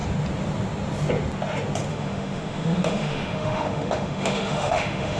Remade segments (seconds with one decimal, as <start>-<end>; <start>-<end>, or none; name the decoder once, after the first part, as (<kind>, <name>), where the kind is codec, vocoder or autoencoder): 1.9-5.2 (autoencoder, DAC-VAE)

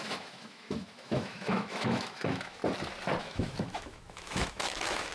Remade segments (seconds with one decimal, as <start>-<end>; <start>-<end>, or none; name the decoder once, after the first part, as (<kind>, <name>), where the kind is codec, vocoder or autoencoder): 0.0-2.6 (autoencoder, DAC-VAE); 3.2-5.1